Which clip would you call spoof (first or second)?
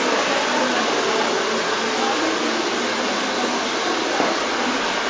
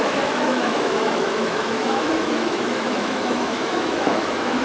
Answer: second